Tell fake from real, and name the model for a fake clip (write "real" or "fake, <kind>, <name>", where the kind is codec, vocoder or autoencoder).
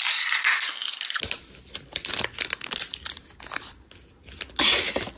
real